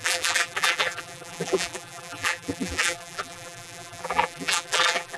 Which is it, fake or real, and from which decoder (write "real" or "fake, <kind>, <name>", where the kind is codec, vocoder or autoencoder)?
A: fake, vocoder, BigVGAN v2